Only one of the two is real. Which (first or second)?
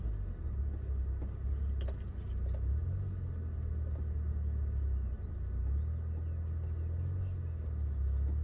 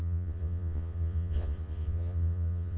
first